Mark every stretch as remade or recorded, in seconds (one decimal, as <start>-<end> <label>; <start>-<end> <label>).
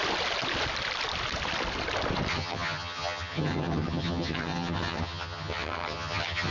0.0-2.3 recorded; 2.3-6.5 remade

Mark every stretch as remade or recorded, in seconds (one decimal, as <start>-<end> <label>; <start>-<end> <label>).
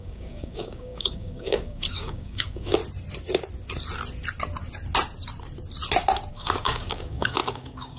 0.0-2.8 remade; 2.8-6.3 recorded; 6.3-8.0 remade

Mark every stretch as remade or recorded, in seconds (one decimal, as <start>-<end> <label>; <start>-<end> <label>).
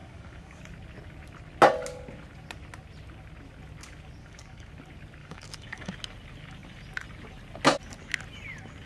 0.0-0.6 remade; 0.6-4.2 recorded; 4.2-4.7 remade; 4.7-5.2 recorded; 5.2-5.9 remade; 5.9-8.9 recorded